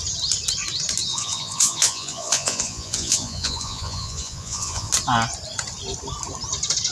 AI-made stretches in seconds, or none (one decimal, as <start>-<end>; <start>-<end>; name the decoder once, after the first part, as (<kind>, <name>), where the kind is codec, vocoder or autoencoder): 1.1-4.9 (vocoder, Vocos)